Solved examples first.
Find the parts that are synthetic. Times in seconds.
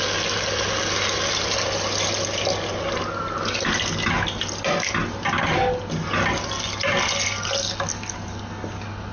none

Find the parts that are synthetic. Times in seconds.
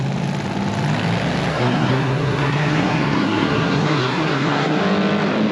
1.5-4.8 (codec, SNAC)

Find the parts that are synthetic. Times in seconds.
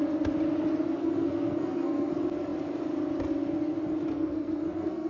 1.0-2.1 (codec, SNAC); 4.1-5.1